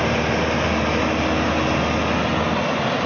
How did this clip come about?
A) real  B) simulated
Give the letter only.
A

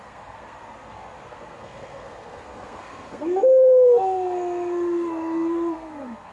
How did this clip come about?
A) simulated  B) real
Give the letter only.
A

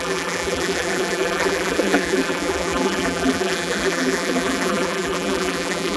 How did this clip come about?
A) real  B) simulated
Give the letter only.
B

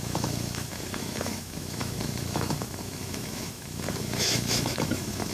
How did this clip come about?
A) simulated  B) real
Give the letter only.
A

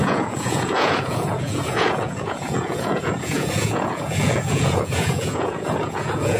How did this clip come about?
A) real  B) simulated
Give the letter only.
B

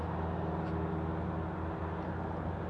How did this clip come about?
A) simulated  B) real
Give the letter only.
B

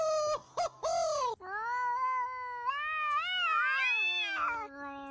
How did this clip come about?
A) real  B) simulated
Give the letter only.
A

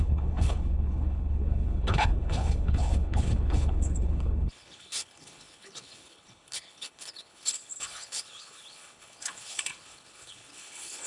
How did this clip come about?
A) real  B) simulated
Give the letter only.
B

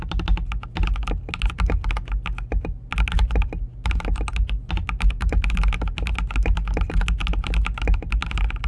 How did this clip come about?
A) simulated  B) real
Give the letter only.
B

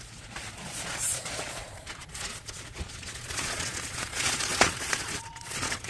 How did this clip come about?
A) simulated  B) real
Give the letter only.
A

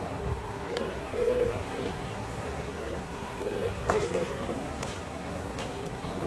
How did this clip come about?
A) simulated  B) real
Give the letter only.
A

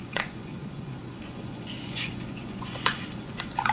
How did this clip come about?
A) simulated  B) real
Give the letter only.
A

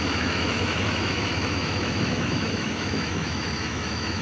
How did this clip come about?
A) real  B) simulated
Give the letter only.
B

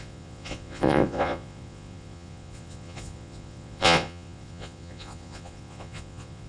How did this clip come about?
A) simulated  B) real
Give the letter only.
A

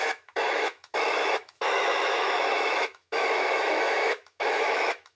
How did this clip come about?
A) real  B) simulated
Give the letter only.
B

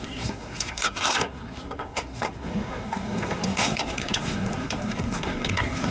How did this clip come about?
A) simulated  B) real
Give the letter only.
A